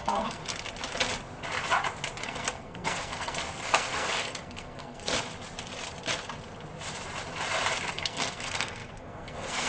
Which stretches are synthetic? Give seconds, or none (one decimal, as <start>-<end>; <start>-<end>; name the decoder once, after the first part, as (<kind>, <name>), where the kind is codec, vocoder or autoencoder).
0.0-0.4 (codec, SNAC); 2.2-5.1; 7.9-9.7